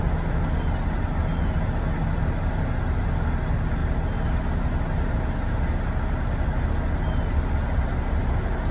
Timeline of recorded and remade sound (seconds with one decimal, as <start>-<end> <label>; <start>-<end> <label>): 0.0-8.7 recorded